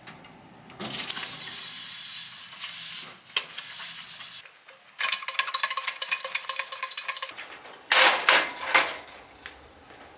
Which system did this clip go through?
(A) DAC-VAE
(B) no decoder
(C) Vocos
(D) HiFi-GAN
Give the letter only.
B